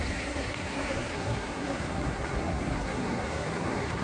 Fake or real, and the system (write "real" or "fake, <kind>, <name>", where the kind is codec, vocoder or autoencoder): fake, codec, SNAC